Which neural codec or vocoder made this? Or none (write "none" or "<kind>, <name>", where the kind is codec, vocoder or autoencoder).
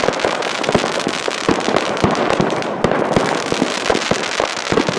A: none